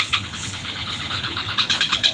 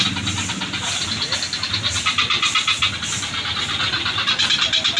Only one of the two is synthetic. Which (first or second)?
first